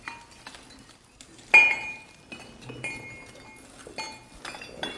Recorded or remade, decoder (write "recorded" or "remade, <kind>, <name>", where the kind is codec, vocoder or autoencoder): recorded